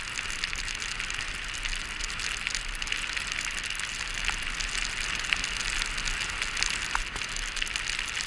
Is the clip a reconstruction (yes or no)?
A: no